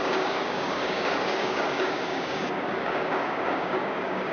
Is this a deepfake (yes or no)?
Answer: yes